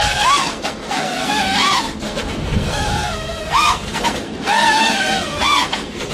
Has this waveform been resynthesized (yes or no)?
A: yes